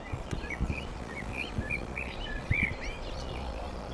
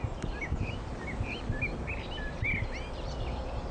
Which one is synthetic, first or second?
first